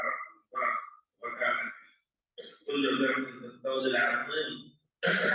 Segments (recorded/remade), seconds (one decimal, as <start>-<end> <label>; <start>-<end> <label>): 0.0-5.3 recorded